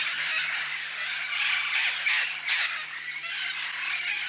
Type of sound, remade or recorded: recorded